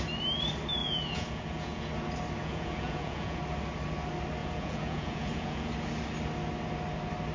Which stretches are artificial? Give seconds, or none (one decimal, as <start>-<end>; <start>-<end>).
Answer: 0.8-1.9; 2.4-3.4; 4.4-5.7